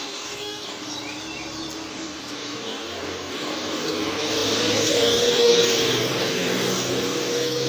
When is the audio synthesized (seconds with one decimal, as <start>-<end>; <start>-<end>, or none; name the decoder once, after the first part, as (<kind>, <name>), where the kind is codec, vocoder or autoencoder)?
0.0-0.9 (codec, DAC); 1.9-7.7